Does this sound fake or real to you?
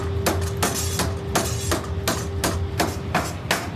real